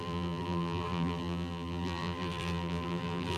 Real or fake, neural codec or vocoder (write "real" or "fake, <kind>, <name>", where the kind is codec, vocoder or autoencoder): fake, vocoder, BigVGAN v2